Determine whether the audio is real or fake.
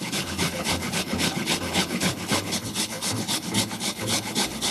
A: fake